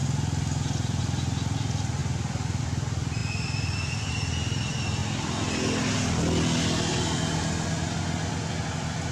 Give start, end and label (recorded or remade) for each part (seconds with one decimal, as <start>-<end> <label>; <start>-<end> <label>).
0.0-9.1 recorded